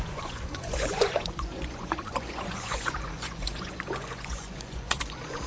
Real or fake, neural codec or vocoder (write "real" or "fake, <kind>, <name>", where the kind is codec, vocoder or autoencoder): fake, vocoder, Vocos